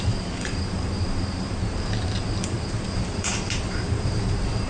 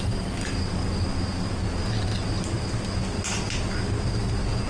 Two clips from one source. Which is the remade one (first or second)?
first